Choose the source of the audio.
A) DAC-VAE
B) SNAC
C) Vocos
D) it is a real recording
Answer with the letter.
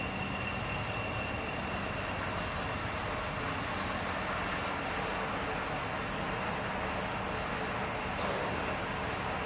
D